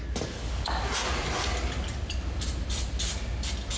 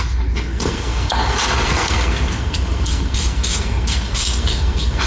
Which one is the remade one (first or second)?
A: second